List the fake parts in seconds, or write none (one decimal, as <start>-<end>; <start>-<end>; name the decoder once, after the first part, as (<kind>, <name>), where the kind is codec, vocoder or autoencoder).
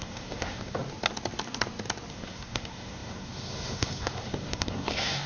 0.0-0.8 (codec, SNAC); 2.1-5.3